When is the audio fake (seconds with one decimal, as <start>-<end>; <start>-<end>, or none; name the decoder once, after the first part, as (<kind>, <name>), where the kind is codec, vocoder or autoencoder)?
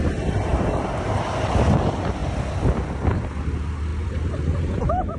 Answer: 2.2-3.2 (vocoder, BigVGAN v2); 3.9-4.8